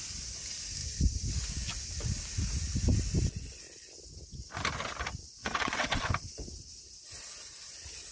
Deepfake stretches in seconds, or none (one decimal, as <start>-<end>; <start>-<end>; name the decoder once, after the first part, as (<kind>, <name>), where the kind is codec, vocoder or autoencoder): 5.4-6.0 (vocoder, WaveNeXt)